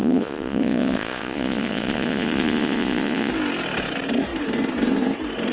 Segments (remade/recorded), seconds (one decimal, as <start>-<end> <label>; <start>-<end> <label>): 0.0-3.3 remade; 3.3-5.5 recorded